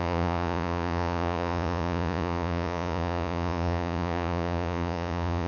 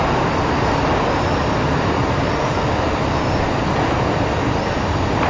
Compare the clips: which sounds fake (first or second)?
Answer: first